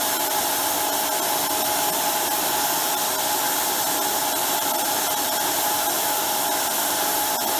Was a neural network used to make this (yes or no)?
no